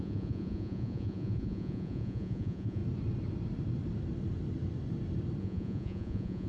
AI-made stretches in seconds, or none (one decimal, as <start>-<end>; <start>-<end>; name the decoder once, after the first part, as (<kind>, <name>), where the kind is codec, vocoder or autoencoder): 0.0-2.8 (vocoder, Vocos); 5.4-6.5

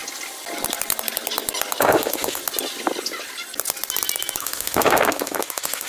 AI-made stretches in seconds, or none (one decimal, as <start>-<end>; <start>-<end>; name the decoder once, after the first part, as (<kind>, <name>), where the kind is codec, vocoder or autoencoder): 1.8-2.4 (autoencoder, DAC-VAE); 4.4-5.9

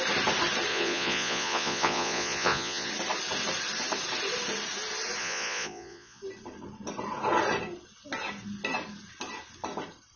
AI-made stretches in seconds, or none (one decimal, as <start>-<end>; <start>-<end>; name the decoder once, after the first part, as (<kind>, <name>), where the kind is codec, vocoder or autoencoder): 0.7-2.9 (vocoder, Vocos); 5.2-6.2

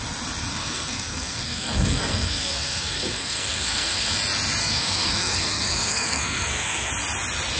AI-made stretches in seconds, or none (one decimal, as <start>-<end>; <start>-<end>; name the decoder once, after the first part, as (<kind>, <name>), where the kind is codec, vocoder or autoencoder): 0.5-4.1 (codec, SNAC); 4.6-6.9

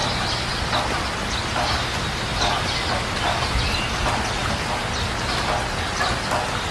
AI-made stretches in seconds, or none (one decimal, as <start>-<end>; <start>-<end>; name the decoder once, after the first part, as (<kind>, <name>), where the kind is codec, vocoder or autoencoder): none

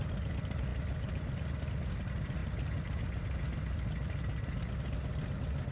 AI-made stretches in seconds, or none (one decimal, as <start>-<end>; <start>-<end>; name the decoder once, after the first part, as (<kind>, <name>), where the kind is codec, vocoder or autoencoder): none

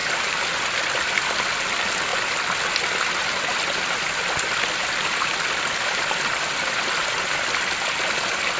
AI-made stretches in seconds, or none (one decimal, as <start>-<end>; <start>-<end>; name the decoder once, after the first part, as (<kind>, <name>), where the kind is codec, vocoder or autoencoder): none